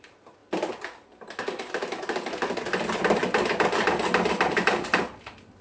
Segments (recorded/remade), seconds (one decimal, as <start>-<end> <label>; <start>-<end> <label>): 0.0-5.6 recorded